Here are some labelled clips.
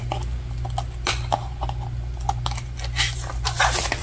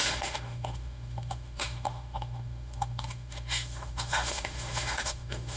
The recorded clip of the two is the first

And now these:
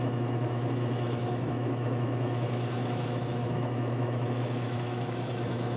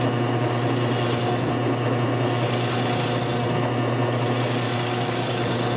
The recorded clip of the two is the second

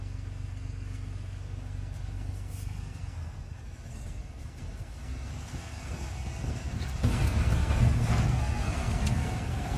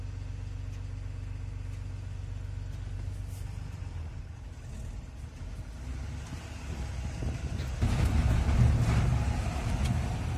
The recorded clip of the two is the second